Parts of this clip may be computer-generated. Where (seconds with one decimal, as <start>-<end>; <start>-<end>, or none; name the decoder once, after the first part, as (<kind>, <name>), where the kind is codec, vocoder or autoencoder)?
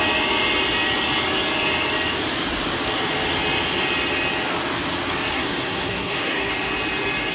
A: 5.3-6.5 (codec, SNAC)